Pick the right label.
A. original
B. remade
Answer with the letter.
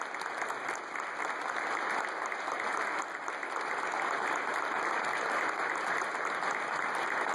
A